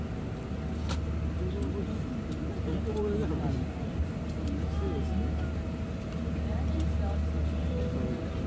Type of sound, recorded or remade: recorded